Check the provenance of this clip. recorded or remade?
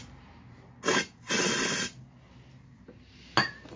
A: recorded